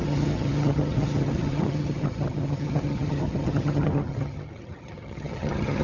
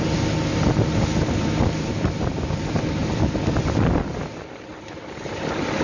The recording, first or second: second